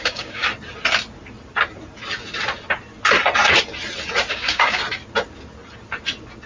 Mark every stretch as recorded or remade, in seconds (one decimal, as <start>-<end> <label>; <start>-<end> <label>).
0.0-0.4 remade; 0.4-4.3 recorded; 4.3-4.8 remade; 4.8-6.5 recorded